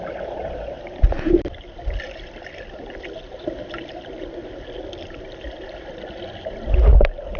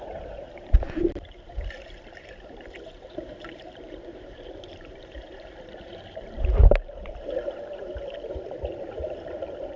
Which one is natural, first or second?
first